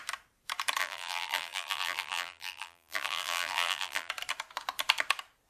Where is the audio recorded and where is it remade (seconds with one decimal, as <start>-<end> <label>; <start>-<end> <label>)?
0.0-0.8 recorded; 0.8-4.1 remade; 4.1-5.5 recorded